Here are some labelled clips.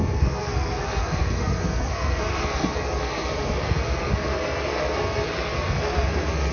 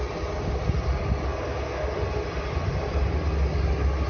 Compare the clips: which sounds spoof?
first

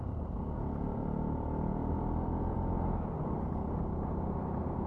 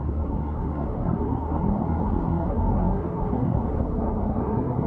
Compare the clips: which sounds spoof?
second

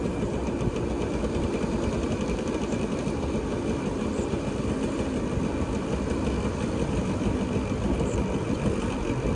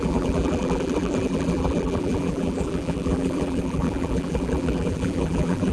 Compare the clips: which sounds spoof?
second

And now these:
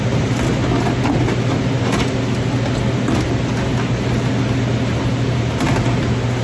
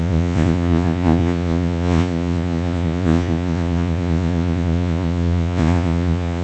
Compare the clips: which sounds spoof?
second